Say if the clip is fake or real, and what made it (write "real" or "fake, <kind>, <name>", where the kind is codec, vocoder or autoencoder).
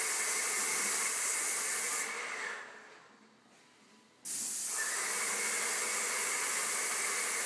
real